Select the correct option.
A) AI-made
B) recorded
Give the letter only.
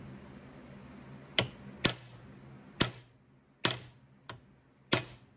B